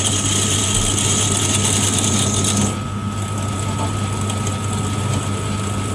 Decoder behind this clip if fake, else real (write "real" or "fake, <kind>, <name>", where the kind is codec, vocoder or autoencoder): real